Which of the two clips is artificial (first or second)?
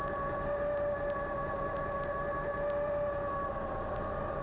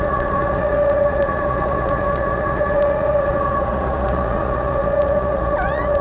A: second